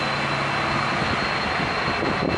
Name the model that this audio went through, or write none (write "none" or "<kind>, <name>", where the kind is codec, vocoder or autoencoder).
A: none